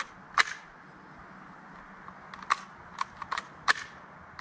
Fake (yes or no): no